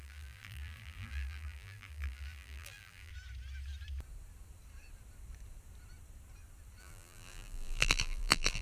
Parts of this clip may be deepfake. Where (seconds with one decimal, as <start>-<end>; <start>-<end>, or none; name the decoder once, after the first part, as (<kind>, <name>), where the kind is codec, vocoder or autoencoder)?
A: 0.0-3.1 (vocoder, BigVGAN v2); 6.8-8.6